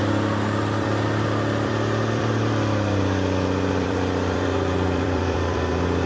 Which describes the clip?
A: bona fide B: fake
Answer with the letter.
B